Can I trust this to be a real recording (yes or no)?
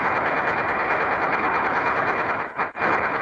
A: no